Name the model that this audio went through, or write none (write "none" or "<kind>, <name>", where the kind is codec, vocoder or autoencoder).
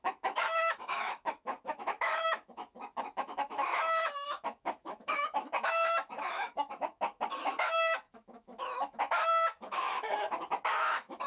autoencoder, DAC-VAE